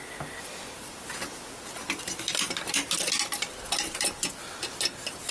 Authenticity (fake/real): real